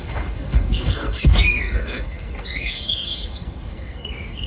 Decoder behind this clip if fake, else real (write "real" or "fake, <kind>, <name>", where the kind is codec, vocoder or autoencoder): fake, codec, SNAC